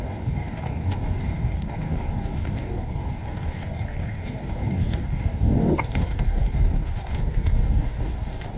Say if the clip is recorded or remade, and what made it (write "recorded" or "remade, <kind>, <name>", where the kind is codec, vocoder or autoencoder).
remade, codec, DAC